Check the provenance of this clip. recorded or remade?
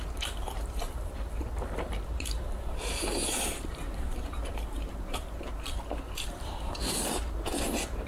remade